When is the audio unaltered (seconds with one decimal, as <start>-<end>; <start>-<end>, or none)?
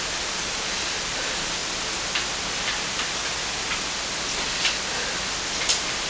1.6-5.3